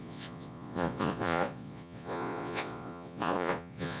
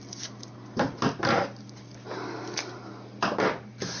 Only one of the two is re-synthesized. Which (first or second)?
first